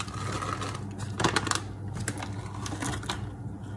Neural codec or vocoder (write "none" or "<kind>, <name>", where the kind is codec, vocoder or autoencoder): none